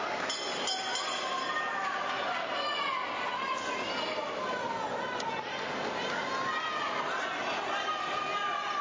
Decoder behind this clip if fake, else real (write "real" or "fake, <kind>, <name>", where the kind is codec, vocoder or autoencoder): real